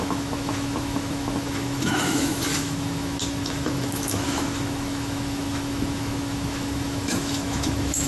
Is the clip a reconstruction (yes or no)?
yes